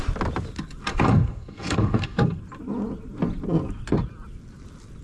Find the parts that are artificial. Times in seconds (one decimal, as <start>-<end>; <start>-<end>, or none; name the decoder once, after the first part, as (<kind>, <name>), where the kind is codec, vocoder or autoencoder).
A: 0.9-2.4 (codec, SNAC)